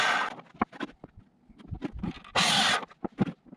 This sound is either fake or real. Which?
real